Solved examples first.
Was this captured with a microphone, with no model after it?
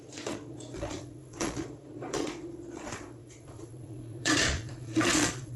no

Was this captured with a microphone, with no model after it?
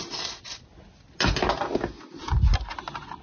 yes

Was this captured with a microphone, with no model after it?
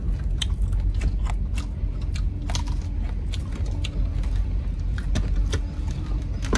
yes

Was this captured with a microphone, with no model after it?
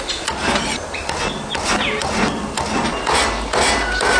yes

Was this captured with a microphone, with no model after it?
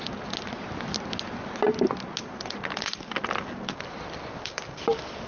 yes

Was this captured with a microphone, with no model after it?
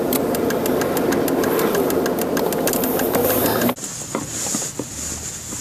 yes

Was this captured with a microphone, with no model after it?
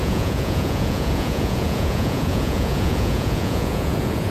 no